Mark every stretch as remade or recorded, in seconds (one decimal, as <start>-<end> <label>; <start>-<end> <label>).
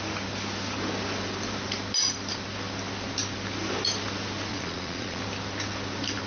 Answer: 0.0-4.5 recorded; 4.5-5.2 remade; 5.2-6.3 recorded